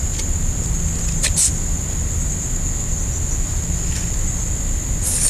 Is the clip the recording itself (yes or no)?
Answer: yes